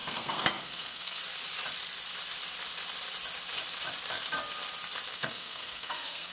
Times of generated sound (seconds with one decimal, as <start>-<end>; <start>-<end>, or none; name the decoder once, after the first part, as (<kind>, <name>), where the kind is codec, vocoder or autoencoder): 0.0-1.2 (codec, SNAC); 5.1-6.3